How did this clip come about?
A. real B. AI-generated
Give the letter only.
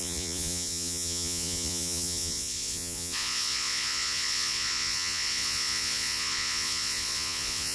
B